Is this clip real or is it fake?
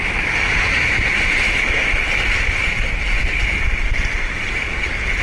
real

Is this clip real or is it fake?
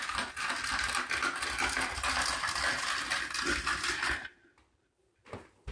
real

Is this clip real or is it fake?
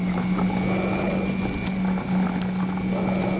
real